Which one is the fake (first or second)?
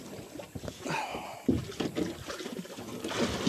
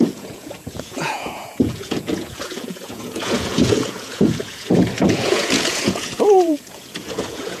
second